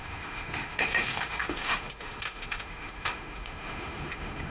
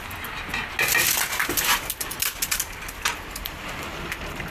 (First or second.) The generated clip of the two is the first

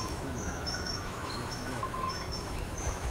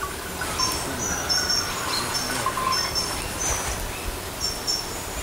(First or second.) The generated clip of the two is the first